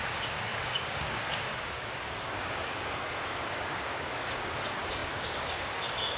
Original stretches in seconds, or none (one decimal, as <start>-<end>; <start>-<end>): none